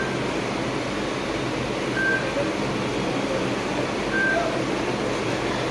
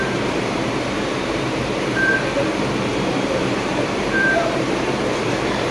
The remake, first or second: second